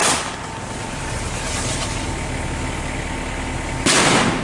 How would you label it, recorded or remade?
recorded